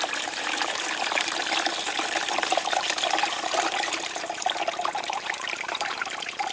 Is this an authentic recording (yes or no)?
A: no